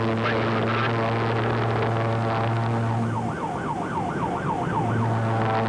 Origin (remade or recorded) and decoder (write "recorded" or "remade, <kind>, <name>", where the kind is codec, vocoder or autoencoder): recorded